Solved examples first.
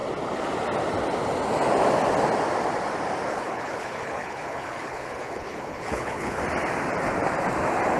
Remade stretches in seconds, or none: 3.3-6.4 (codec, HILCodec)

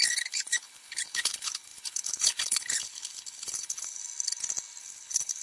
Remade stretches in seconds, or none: 0.0-4.0 (codec, HILCodec); 4.8-5.4

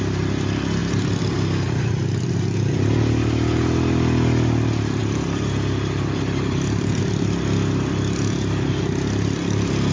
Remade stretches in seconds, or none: 5.0-7.0 (vocoder, BigVGAN v2)

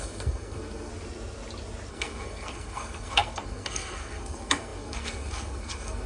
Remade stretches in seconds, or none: 0.0-0.9 (codec, SNAC); 1.9-6.1

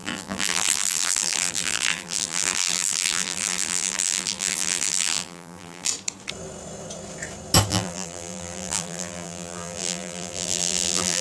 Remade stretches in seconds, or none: 0.0-5.9 (vocoder, BigVGAN v2); 7.7-11.2